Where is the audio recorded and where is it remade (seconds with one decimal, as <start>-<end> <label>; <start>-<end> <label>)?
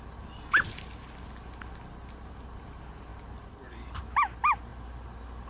0.0-5.5 recorded